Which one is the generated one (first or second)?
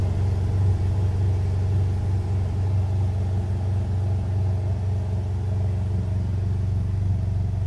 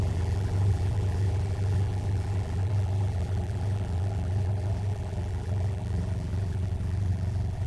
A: second